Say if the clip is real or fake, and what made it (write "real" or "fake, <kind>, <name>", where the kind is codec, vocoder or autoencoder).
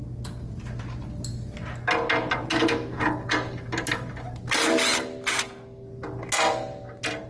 real